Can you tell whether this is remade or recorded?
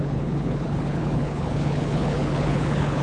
remade